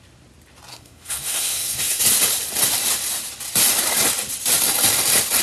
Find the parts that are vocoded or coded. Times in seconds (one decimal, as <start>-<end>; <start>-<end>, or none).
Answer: 0.7-2.0

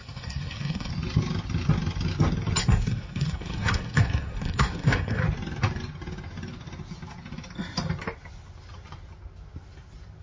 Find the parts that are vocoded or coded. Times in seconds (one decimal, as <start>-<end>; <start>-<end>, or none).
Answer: 0.0-0.9; 2.6-5.2

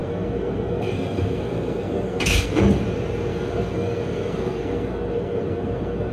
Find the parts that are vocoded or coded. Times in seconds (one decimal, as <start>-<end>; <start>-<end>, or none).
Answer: 0.0-2.8; 3.3-6.1

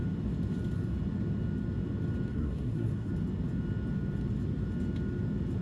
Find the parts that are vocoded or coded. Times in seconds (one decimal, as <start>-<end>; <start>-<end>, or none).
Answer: 2.3-3.1